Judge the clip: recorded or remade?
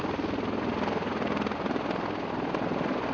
recorded